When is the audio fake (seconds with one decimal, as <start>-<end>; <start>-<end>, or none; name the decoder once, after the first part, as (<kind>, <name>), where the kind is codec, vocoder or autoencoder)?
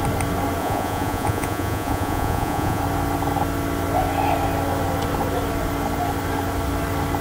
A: 0.6-2.8 (vocoder, Vocos)